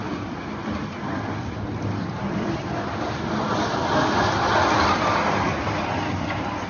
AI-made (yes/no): no